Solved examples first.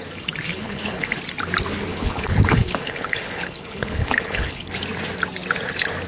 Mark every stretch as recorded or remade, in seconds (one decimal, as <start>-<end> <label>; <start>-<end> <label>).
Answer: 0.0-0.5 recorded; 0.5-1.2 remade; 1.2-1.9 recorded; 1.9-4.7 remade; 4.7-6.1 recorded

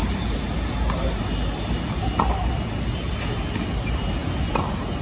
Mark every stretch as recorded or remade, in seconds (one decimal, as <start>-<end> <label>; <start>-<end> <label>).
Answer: 0.0-5.0 recorded

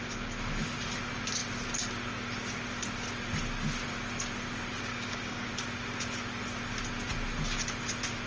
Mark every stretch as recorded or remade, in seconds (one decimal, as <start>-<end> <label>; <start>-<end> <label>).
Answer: 0.0-4.9 recorded; 4.9-5.5 remade; 5.5-8.3 recorded